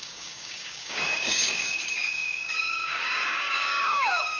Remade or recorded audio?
remade